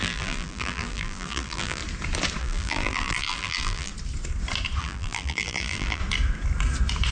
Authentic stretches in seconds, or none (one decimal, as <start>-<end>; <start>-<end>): 1.8-2.4; 3.9-4.8; 6.0-7.1